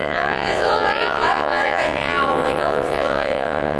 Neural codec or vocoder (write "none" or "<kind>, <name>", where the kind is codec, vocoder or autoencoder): vocoder, WaveNeXt